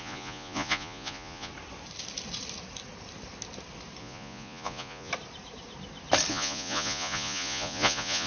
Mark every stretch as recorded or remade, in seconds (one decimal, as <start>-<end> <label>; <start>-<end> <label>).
0.0-1.5 remade; 1.5-4.0 recorded; 4.0-5.1 remade; 5.1-6.3 recorded; 6.3-8.3 remade